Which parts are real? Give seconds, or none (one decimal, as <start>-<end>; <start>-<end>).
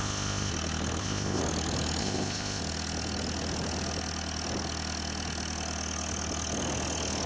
0.5-1.0; 1.4-2.0; 2.6-7.3